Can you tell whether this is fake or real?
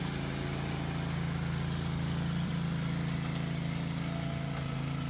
real